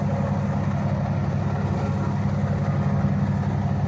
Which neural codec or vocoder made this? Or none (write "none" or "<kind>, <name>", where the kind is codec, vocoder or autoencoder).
none